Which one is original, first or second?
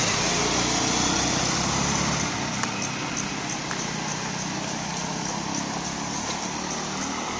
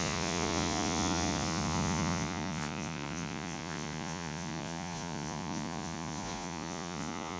first